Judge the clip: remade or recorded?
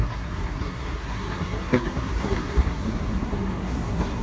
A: remade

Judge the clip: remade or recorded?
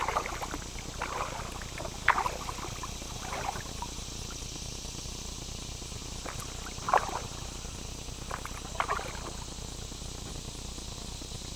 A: recorded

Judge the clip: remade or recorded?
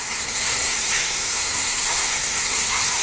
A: remade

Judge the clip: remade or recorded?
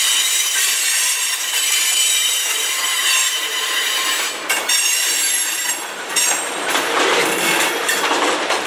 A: remade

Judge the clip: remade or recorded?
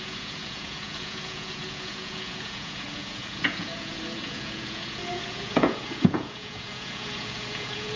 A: remade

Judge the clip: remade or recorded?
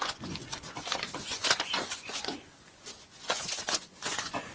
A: remade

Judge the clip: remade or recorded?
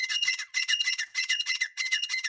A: remade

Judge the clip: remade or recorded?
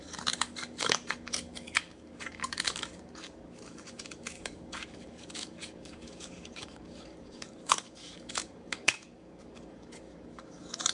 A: remade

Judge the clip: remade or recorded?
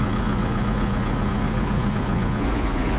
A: remade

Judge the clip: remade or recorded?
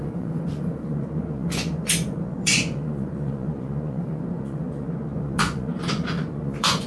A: remade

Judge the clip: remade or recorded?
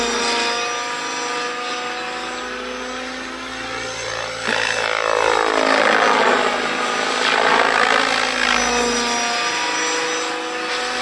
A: recorded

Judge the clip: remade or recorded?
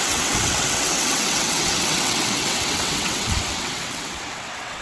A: remade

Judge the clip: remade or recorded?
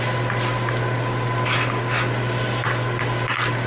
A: recorded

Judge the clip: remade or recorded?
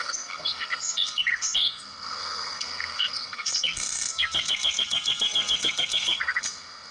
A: remade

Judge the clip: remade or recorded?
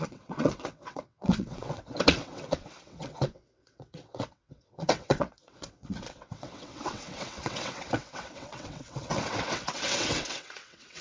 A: remade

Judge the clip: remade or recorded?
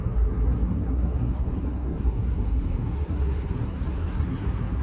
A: remade